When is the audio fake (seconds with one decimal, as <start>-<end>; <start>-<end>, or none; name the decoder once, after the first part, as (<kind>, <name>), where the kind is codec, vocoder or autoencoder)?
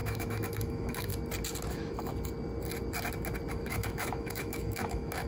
0.0-1.1 (autoencoder, DAC-VAE); 1.7-2.1; 3.5-5.3